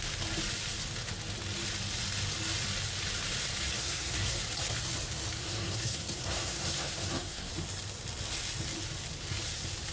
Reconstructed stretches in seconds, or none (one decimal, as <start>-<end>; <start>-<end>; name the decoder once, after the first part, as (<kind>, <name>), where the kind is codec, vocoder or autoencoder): 3.8-4.4 (codec, SNAC); 5.4-7.5